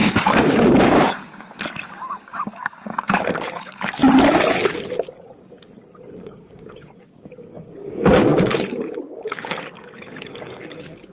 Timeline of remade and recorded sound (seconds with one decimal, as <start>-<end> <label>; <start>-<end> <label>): 0.0-4.0 remade; 4.0-6.1 recorded; 6.1-11.1 remade